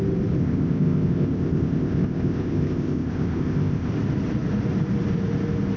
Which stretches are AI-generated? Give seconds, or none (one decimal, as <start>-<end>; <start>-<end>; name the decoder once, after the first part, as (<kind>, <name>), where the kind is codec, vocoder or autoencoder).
0.4-3.9 (codec, ZipCodec)